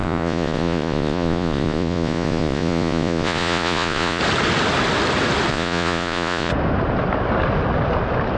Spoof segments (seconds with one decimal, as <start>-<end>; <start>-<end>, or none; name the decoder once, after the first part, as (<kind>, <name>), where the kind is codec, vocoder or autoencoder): 0.0-4.2 (vocoder, Vocos); 5.5-6.5